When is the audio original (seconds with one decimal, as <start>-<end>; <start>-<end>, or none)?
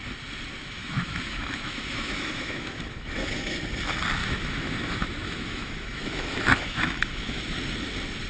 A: 0.0-0.6; 3.6-4.2; 7.4-8.3